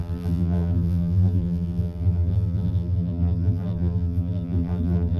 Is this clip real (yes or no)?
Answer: no